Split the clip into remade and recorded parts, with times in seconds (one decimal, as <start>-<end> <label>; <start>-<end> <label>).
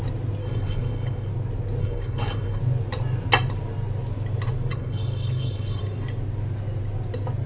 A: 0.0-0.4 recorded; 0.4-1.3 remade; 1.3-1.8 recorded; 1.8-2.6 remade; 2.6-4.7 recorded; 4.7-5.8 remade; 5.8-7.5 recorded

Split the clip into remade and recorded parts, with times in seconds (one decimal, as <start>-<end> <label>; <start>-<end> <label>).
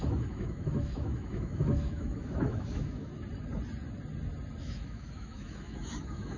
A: 0.0-3.1 remade; 3.1-4.6 recorded; 4.6-6.4 remade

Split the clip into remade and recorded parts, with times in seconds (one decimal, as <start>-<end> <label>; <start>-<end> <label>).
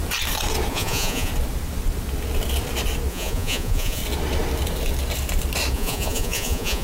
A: 0.0-0.7 recorded; 0.7-1.3 remade; 1.3-3.1 recorded; 3.1-4.0 remade; 4.0-5.7 recorded; 5.7-6.8 remade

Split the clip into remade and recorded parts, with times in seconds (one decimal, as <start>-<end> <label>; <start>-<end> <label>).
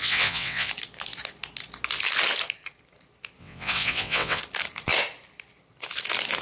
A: 0.0-0.7 remade; 0.7-3.4 recorded; 3.4-4.4 remade; 4.4-6.4 recorded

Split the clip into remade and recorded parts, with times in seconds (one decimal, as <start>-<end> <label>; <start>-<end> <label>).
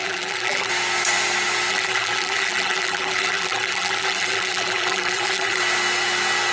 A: 0.0-0.7 remade; 0.7-1.7 recorded; 1.7-5.6 remade; 5.6-6.5 recorded